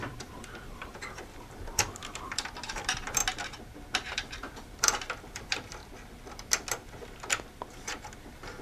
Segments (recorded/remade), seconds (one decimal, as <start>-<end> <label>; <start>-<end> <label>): 0.0-3.2 remade; 3.2-4.1 recorded; 4.1-5.8 remade; 5.8-8.2 recorded; 8.2-8.6 remade